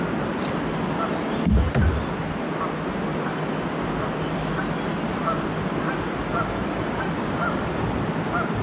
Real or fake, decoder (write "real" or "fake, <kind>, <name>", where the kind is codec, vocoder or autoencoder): real